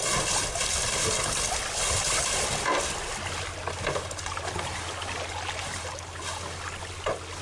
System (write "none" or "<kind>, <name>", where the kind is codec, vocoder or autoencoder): none